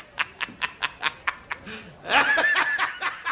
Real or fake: real